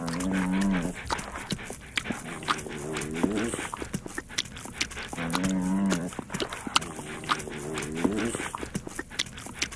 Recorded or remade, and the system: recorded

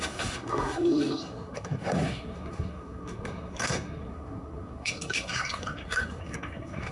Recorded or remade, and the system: remade, codec, SNAC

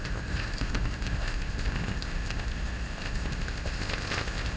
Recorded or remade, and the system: remade, codec, ZipCodec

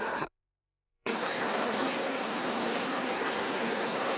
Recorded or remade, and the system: remade, codec, SNAC